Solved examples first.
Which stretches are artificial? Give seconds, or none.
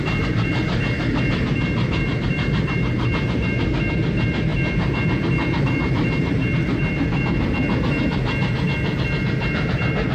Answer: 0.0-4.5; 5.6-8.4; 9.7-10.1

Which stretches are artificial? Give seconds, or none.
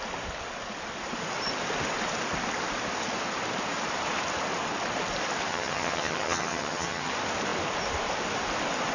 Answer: 5.5-7.1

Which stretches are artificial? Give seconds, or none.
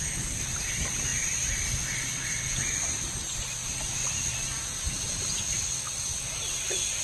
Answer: none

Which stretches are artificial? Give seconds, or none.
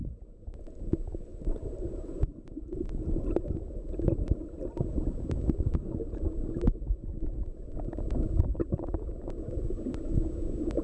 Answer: 1.3-4.5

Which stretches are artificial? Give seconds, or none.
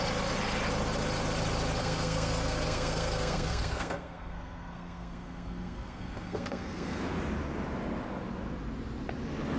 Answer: 1.8-7.0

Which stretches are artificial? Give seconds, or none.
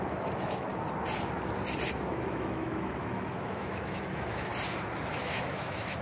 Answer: 0.0-0.7; 2.1-4.5; 5.1-6.0